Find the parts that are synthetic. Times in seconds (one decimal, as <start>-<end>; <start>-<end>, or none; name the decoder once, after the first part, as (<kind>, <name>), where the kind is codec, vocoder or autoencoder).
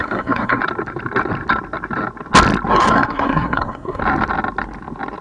0.0-0.6 (codec, SNAC); 2.7-4.0